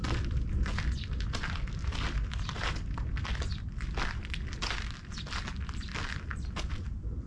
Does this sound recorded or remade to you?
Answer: recorded